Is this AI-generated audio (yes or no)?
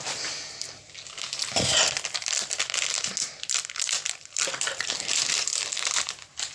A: no